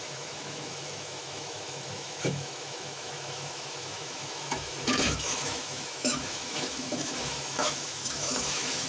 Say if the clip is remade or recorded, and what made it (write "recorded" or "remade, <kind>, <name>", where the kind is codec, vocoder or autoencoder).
remade, autoencoder, DAC-VAE